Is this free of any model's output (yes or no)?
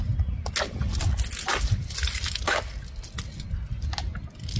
yes